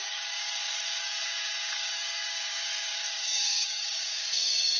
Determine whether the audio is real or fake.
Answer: fake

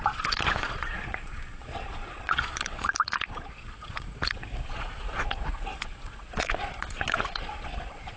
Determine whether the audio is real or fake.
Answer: fake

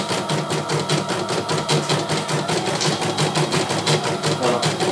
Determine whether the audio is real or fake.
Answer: real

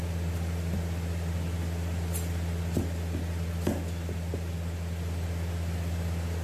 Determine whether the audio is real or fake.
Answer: real